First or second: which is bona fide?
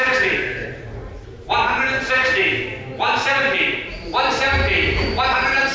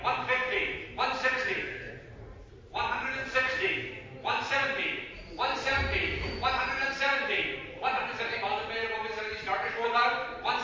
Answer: first